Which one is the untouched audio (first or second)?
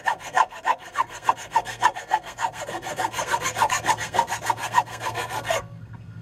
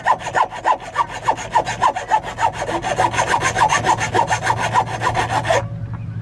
second